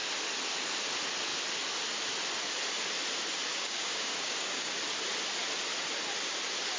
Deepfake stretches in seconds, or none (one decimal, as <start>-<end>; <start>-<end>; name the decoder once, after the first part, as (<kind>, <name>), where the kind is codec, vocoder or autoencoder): 3.5-4.7 (codec, DAC)